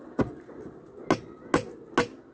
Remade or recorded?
recorded